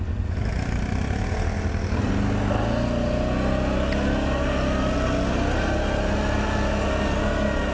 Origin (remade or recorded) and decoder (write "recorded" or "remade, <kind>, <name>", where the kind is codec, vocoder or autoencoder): recorded